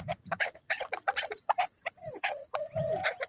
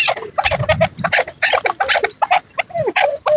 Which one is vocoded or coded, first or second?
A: first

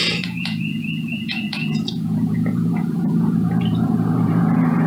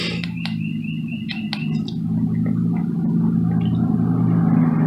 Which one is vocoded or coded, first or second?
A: first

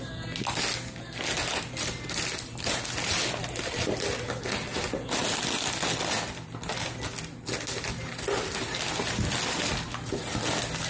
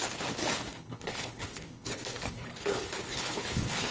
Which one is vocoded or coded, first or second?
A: second